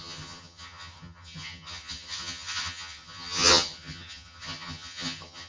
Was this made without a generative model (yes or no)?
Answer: no